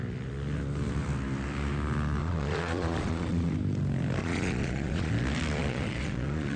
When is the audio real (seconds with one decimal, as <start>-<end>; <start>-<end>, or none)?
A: 0.0-2.2; 3.5-4.2; 5.1-5.6